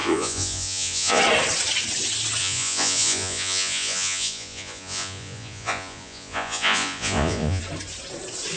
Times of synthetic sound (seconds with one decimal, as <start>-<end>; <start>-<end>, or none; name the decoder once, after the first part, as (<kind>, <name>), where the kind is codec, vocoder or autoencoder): 0.0-1.2 (vocoder, Vocos); 2.4-7.6